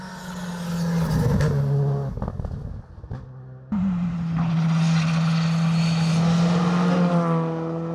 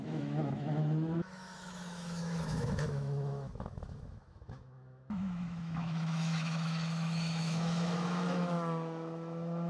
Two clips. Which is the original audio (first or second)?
first